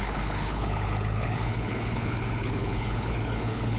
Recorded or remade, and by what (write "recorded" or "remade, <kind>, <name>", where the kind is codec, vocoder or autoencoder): remade, codec, HILCodec